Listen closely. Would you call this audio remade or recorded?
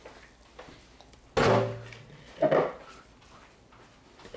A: recorded